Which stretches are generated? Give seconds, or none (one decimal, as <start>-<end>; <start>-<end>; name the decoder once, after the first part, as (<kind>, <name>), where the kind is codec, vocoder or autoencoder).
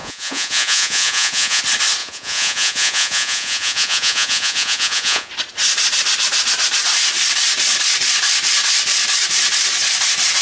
0.0-1.6 (vocoder, Vocos); 2.0-5.3